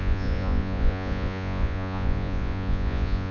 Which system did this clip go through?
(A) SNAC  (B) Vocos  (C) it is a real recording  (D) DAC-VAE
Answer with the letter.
B